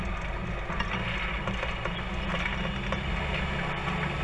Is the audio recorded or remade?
recorded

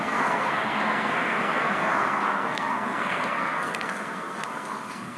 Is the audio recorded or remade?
remade